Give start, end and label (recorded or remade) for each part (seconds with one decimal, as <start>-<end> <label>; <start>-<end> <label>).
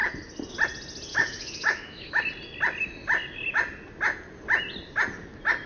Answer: 0.0-1.1 recorded; 1.1-2.2 remade; 2.2-5.7 recorded